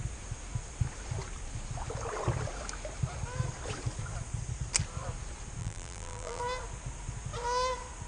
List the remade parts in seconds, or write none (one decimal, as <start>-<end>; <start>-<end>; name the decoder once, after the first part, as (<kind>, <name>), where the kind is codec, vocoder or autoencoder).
5.6-6.4 (vocoder, BigVGAN v2)